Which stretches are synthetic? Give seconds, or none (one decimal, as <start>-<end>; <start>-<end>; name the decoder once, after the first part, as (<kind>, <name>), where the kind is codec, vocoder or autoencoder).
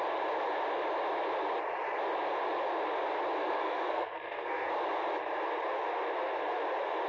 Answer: 3.4-4.7 (codec, SNAC)